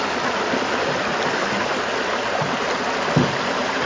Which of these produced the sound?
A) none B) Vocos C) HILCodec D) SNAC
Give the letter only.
A